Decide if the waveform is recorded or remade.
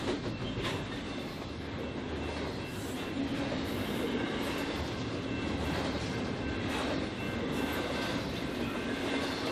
recorded